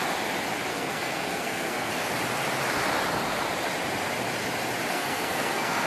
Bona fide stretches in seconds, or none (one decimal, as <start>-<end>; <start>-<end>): 0.0-0.7; 1.9-4.9